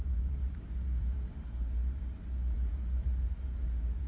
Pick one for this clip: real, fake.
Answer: fake